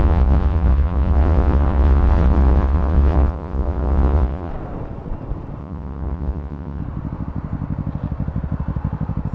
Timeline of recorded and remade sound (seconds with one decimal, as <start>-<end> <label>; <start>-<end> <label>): 0.0-4.5 remade; 4.5-5.6 recorded; 5.6-6.8 remade; 6.8-9.3 recorded